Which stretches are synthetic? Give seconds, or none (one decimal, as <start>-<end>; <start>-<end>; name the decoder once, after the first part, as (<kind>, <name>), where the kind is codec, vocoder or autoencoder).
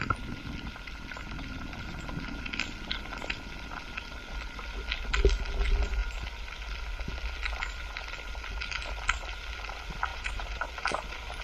10.1-10.7 (vocoder, BigVGAN v2)